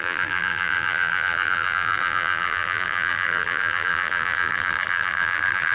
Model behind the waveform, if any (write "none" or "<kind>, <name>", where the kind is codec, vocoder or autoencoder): vocoder, BigVGAN v2